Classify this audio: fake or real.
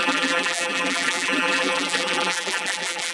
fake